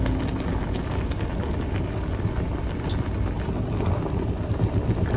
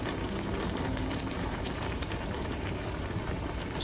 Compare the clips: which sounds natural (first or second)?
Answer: first